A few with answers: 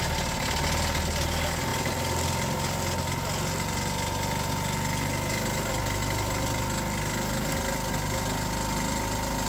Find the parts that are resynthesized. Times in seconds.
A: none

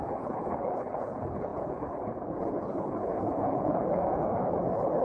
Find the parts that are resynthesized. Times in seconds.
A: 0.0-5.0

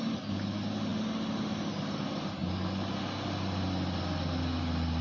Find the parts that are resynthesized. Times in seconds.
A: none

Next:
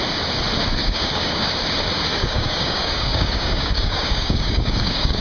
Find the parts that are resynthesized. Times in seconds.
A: 0.8-1.5; 2.1-5.2

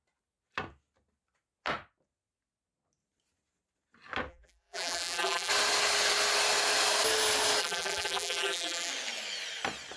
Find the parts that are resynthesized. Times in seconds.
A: 4.3-5.5; 7.6-8.9

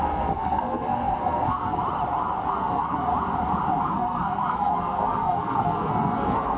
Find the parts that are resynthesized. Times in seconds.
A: 0.0-1.8; 2.5-3.1; 3.8-6.6